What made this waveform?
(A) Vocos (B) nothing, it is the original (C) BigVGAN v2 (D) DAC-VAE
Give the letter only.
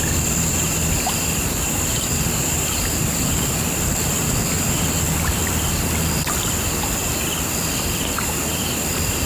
C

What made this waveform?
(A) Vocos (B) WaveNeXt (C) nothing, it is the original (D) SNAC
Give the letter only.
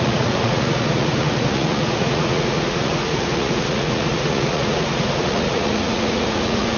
A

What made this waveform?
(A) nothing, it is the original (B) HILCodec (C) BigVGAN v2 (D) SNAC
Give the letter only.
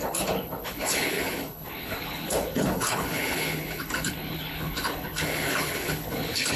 B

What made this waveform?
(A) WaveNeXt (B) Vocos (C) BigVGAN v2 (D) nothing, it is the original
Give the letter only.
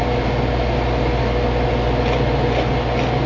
D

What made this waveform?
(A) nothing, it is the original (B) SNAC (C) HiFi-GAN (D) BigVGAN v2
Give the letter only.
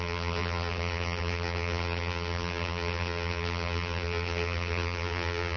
D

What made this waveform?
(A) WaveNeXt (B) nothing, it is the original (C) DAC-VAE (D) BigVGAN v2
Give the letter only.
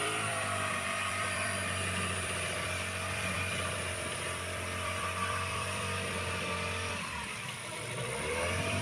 D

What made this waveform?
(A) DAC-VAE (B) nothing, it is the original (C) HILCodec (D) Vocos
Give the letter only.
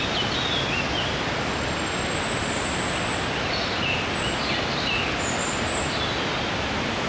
B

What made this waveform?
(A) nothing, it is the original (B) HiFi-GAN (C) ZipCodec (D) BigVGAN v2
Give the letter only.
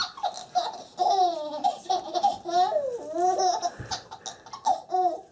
A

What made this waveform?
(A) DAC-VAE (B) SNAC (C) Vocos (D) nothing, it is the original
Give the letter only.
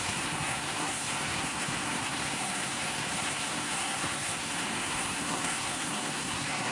B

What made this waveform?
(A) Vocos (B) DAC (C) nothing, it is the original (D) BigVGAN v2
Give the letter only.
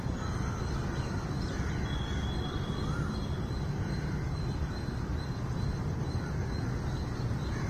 C